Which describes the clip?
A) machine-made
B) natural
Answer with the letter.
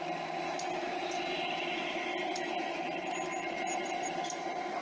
B